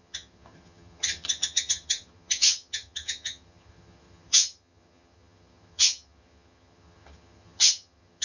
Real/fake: fake